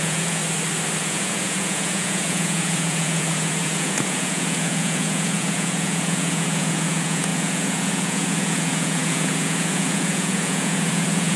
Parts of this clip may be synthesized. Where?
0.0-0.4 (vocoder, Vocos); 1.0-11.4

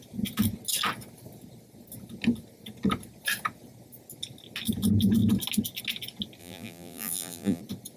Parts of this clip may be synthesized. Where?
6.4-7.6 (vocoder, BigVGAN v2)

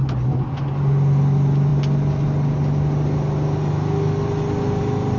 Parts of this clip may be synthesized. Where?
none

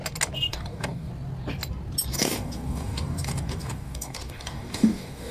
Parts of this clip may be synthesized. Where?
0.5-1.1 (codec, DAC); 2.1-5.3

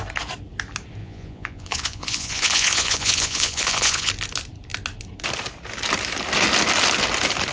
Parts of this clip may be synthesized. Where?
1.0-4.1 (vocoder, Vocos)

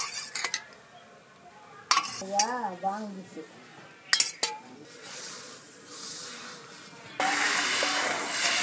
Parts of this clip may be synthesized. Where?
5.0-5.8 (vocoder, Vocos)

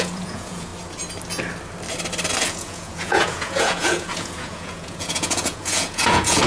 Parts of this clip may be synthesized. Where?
0.0-0.7 (vocoder, Vocos); 2.5-6.5

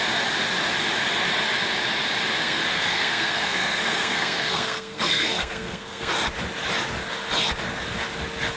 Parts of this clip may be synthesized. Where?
2.4-6.1 (codec, SNAC)